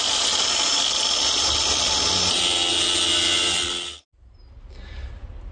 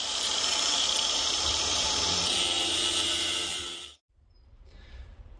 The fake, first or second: second